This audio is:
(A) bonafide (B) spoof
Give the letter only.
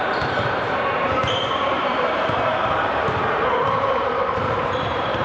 B